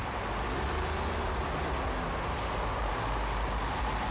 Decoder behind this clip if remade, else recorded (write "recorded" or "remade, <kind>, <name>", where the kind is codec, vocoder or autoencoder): recorded